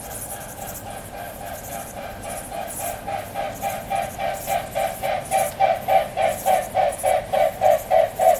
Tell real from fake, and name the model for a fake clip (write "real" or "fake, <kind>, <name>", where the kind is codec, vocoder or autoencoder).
real